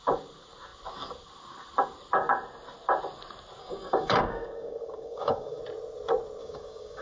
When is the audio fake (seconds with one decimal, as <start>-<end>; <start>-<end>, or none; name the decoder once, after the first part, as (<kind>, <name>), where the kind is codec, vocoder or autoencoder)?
3.6-5.6 (codec, DAC); 6.4-7.0

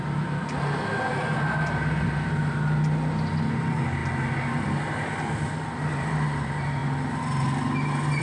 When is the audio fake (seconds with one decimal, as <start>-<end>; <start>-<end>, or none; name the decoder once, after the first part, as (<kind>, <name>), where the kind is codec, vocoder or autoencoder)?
none

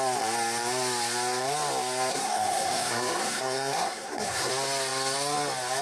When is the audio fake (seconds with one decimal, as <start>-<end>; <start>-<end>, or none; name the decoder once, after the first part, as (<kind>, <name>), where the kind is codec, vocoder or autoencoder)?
2.1-4.5 (codec, SNAC)

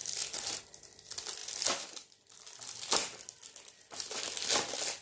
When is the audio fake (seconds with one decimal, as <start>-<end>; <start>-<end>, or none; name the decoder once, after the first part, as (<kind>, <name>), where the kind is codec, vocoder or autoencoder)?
none

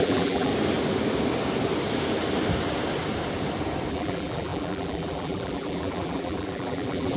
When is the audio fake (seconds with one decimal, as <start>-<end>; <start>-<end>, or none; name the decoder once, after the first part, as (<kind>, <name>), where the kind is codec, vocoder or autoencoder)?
0.0-0.5 (vocoder, BigVGAN v2); 3.9-7.2

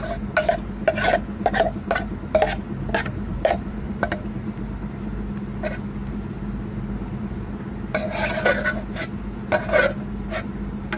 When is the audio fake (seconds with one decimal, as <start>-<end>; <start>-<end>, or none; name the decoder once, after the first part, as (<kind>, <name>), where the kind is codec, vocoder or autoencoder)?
3.3-4.3 (vocoder, BigVGAN v2)